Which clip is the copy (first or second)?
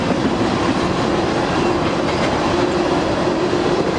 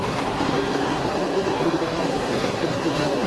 second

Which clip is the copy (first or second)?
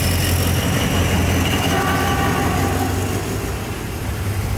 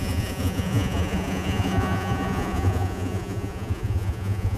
second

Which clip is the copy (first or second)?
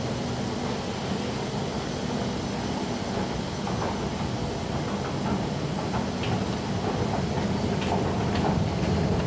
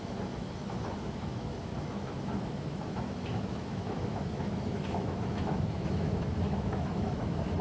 second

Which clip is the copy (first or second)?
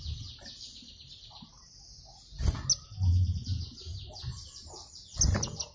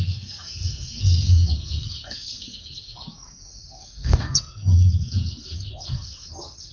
second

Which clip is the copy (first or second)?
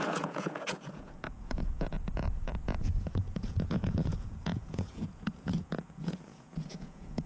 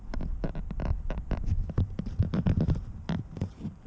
first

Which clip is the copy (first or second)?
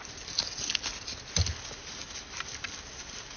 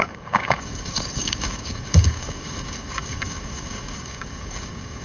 second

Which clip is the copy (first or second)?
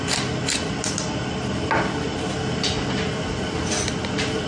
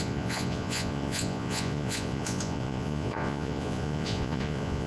second